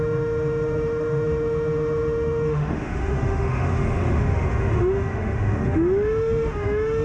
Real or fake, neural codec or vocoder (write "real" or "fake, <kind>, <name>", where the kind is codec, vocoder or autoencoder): fake, autoencoder, DAC-VAE